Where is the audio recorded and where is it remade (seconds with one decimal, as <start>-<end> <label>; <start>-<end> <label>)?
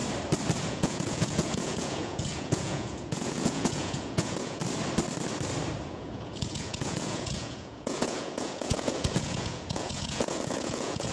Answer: 0.0-0.7 recorded; 0.7-4.6 remade; 4.6-5.9 recorded; 5.9-11.1 remade